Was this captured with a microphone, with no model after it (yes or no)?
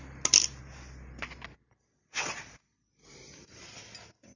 yes